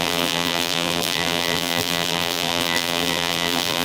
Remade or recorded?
remade